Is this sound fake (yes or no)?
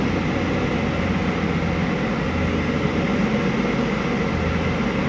no